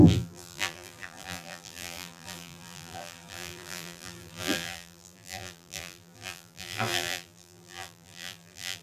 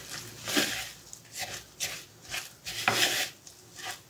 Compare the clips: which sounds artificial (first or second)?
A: first